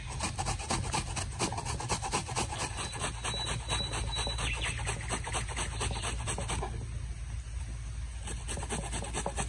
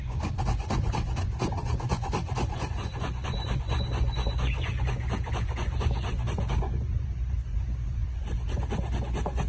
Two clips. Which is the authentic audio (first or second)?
first